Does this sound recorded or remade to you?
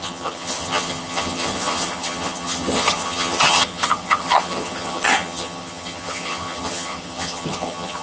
remade